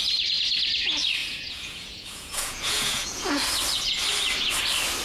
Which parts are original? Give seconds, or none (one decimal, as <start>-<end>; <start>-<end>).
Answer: 0.0-1.2; 3.4-5.0